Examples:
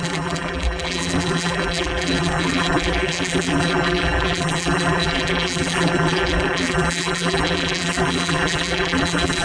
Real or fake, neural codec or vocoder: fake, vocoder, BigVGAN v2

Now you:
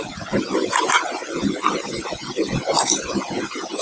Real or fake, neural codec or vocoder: real